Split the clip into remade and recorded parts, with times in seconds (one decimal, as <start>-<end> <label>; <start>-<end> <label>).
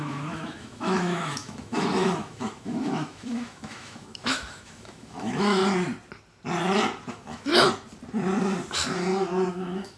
0.0-5.6 remade; 5.6-7.1 recorded; 7.1-7.5 remade; 7.5-9.5 recorded; 9.5-10.0 remade